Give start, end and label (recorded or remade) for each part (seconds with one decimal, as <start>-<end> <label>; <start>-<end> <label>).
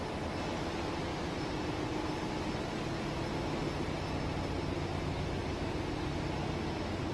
0.0-7.1 recorded